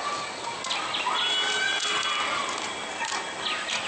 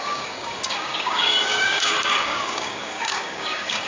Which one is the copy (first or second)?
second